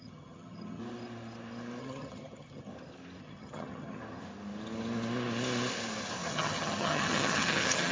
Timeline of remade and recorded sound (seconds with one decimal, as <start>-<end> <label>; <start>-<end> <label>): 0.0-0.8 remade; 0.8-1.8 recorded; 1.8-2.7 remade; 2.7-3.2 recorded; 3.2-4.0 remade; 4.0-6.3 recorded; 6.3-7.9 remade